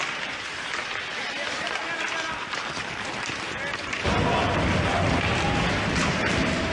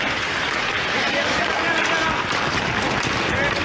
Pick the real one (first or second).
second